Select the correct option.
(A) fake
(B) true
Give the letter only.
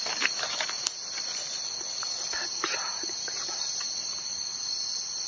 B